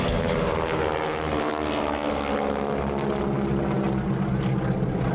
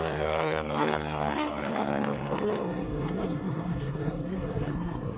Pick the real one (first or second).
first